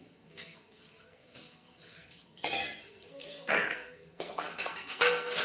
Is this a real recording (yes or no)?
no